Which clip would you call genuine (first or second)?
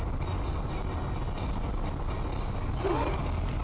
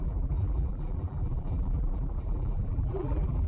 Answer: first